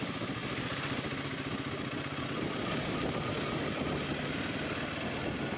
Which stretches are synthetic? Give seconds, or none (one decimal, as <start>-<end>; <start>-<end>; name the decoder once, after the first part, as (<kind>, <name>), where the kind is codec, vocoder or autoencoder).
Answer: none